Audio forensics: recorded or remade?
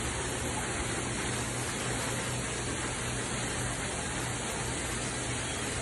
recorded